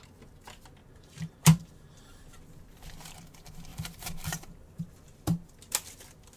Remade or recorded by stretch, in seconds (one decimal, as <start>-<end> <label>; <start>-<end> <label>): 0.0-0.8 recorded; 0.8-1.9 remade; 1.9-3.7 recorded; 3.7-4.8 remade; 4.8-6.4 recorded